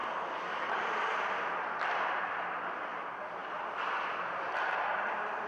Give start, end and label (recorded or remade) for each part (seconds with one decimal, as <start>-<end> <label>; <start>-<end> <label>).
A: 0.0-5.5 recorded